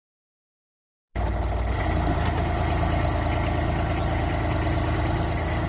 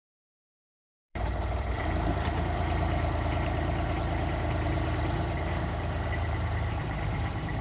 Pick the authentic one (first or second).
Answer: first